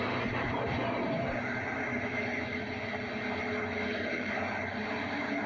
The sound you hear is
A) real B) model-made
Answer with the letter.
A